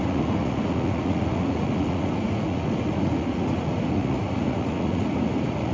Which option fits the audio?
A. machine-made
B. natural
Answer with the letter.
A